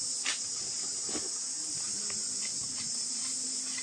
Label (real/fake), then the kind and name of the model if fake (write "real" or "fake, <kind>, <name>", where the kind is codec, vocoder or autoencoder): real